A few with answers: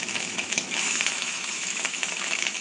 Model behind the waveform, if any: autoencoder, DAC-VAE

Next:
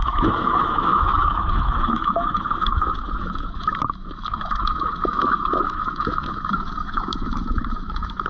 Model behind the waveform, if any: autoencoder, DAC-VAE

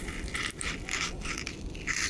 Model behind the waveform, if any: none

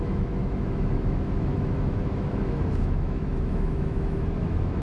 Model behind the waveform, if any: autoencoder, DAC-VAE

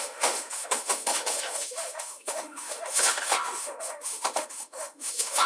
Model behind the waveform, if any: autoencoder, DAC-VAE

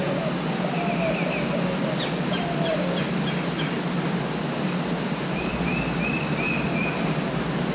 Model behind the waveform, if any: none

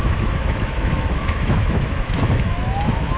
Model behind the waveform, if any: autoencoder, DAC-VAE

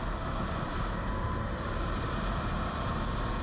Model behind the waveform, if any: none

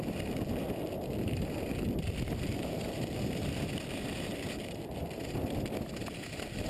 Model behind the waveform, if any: none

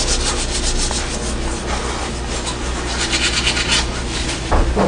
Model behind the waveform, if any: none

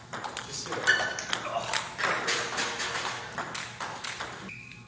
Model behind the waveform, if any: none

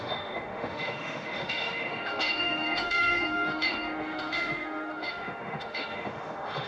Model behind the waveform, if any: autoencoder, DAC-VAE